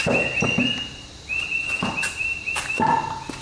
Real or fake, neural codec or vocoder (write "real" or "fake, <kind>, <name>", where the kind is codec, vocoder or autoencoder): real